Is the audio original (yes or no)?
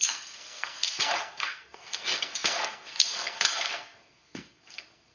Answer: no